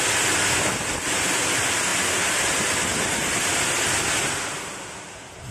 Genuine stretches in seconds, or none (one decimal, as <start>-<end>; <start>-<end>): 0.0-5.5